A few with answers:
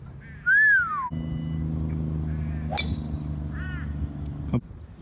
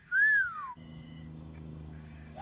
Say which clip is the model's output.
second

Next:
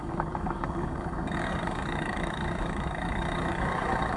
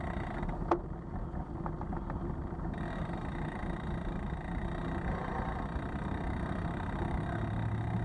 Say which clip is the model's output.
first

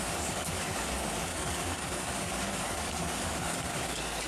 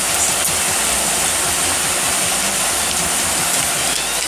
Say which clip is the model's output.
first